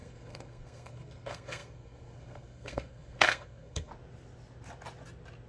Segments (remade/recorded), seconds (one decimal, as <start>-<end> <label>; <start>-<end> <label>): 0.0-3.9 remade; 3.9-5.5 recorded